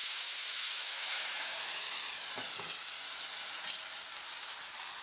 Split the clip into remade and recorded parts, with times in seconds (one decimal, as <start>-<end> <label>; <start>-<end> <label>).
0.0-2.0 remade; 2.0-5.0 recorded